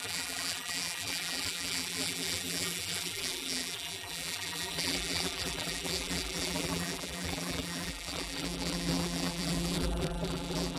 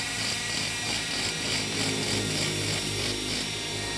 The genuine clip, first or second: second